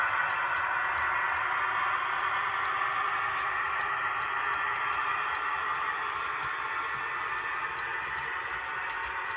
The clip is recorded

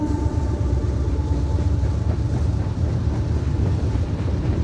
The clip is remade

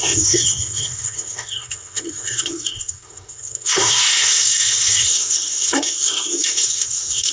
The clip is remade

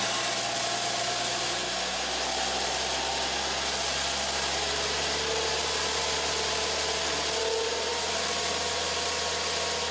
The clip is recorded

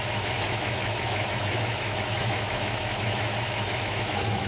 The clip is remade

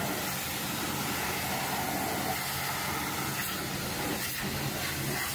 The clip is recorded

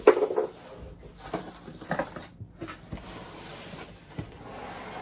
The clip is recorded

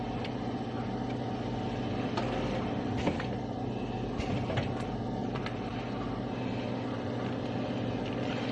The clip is recorded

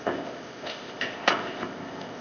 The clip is remade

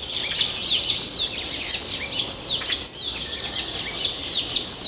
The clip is recorded